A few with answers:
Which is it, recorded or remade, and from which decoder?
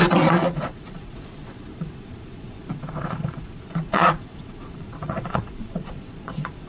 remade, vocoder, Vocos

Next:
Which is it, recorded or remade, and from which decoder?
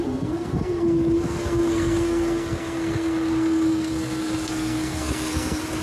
remade, codec, SNAC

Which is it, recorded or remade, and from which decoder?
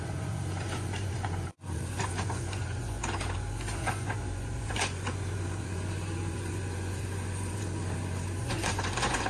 remade, vocoder, Vocos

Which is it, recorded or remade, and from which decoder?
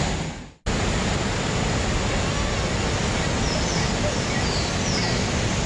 recorded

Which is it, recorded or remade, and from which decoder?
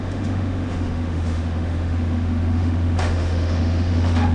remade, autoencoder, DAC-VAE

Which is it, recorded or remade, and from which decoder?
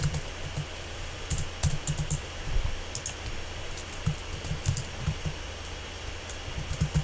recorded